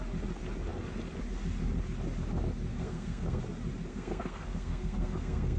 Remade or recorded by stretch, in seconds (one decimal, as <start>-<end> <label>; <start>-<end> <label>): 0.0-2.7 recorded; 2.7-3.4 remade; 3.4-3.9 recorded; 3.9-5.6 remade